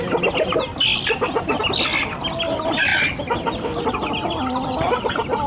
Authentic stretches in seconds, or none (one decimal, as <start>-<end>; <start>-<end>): 0.0-5.5

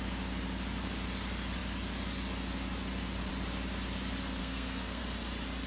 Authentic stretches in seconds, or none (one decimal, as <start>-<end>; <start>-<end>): 0.0-4.4; 5.0-5.7

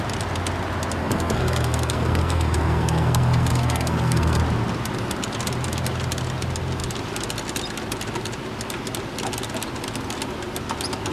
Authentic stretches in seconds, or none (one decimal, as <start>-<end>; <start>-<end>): 0.0-1.0; 4.4-11.1

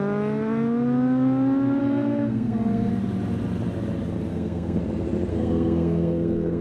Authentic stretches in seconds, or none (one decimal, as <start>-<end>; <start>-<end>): 0.0-1.8; 2.9-4.3; 4.8-5.3

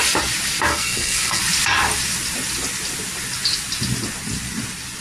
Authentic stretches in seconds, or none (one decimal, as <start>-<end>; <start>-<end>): 0.0-0.7; 1.4-5.0

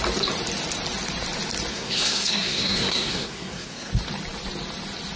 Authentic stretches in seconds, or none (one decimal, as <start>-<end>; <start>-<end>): 0.0-1.7; 3.9-5.2